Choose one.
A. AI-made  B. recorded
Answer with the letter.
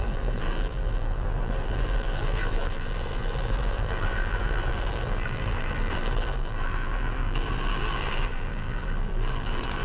A